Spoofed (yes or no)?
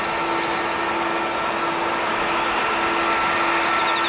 no